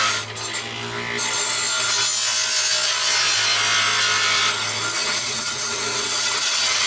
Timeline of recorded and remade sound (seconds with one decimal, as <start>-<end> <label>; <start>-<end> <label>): 0.0-5.0 recorded; 5.0-6.9 remade